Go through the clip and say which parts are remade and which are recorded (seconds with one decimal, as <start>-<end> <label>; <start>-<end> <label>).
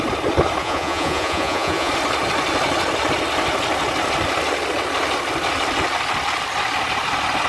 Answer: 0.0-0.6 recorded; 0.6-1.9 remade; 1.9-7.5 recorded